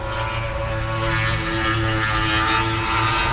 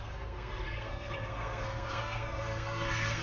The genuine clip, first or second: first